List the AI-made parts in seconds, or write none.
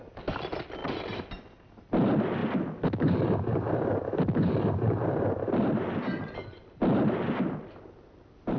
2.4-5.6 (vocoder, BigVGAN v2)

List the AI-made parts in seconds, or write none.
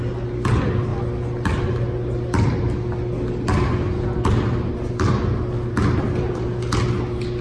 none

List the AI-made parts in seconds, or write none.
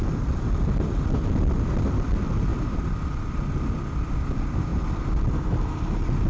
none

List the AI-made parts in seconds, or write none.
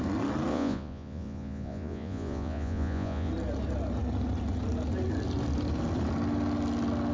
0.5-3.3 (vocoder, Vocos)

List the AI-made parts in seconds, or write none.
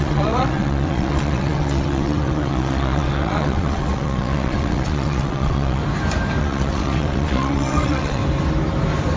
0.0-5.8 (vocoder, WaveNeXt); 6.4-8.2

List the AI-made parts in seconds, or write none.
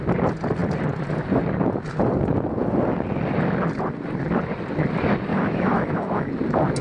5.3-6.3 (autoencoder, DAC-VAE)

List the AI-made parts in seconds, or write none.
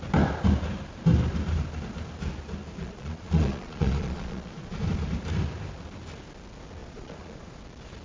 2.8-4.8 (vocoder, Vocos); 6.8-7.6